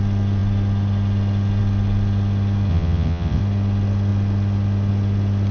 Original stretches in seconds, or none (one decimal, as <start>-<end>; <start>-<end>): 0.0-2.7; 3.4-5.5